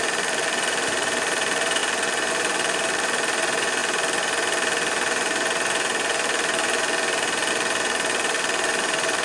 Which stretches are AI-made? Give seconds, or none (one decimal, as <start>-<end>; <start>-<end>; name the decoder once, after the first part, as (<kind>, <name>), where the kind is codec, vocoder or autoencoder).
0.0-1.8 (vocoder, BigVGAN v2); 2.3-3.8; 7.5-9.2